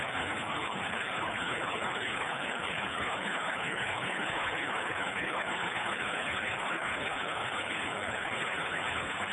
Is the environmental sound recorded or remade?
remade